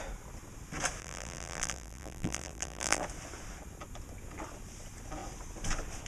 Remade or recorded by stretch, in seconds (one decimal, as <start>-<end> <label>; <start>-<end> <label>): 0.0-1.0 recorded; 1.0-3.0 remade; 3.0-6.1 recorded